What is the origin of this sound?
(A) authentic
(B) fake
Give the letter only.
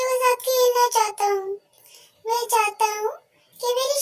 B